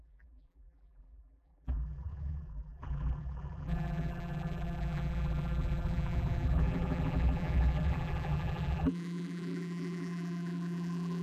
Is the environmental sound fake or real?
fake